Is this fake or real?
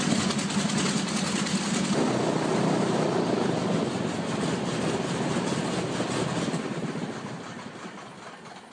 real